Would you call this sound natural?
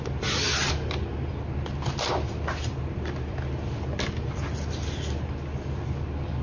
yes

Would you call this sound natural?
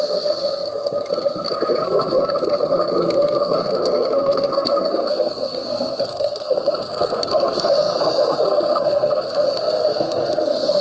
no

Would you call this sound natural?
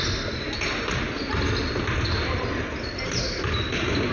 yes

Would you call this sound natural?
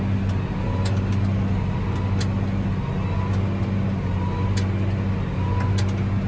yes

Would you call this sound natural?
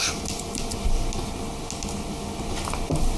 yes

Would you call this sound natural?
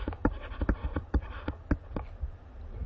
no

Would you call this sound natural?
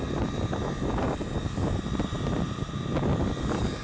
yes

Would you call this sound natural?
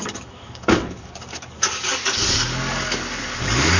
no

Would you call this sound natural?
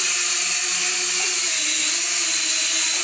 yes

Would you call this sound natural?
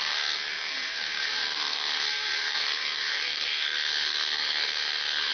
no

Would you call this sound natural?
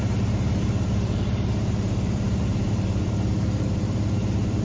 no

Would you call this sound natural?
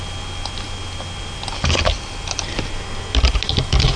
yes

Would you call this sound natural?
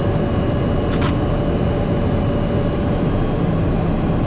yes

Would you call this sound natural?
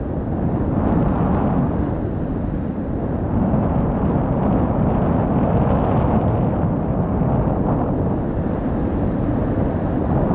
yes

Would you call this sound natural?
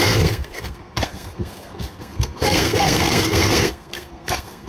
no